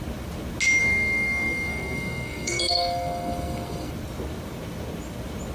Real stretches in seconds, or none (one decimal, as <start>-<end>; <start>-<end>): 0.0-0.8; 3.9-5.5